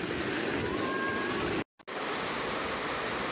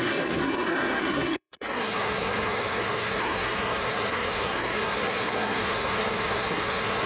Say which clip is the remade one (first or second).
second